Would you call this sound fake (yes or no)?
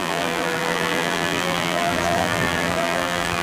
yes